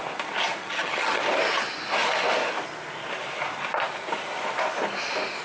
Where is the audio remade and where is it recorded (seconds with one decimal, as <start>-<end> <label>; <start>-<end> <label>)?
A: 0.0-0.6 recorded; 0.6-1.2 remade; 1.2-5.4 recorded